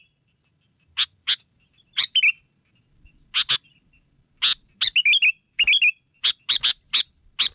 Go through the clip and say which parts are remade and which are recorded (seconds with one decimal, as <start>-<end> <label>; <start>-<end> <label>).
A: 0.0-7.5 recorded